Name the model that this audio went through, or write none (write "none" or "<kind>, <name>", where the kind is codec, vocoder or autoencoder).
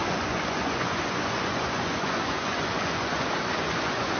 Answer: vocoder, Vocos